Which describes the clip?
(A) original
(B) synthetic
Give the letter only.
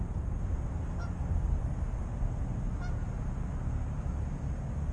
A